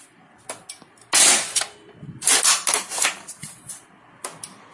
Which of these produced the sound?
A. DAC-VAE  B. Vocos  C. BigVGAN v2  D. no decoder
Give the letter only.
D